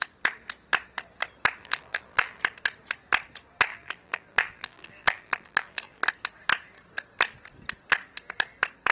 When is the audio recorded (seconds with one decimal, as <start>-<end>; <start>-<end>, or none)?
0.0-1.6; 2.4-3.7; 6.1-8.9